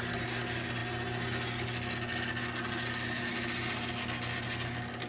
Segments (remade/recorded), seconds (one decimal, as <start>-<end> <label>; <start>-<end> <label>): 0.0-5.1 recorded